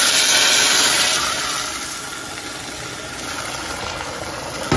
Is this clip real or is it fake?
real